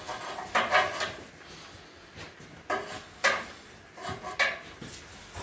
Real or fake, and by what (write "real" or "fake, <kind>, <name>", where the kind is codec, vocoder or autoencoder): real